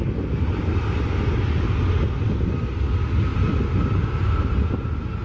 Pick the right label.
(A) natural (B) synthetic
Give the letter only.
A